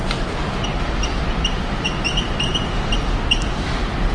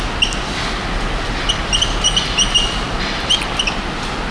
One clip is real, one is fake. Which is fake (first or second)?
first